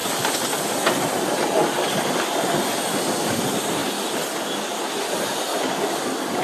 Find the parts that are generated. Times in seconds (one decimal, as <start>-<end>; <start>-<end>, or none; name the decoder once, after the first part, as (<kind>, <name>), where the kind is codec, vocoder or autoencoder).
3.8-5.2 (vocoder, BigVGAN v2)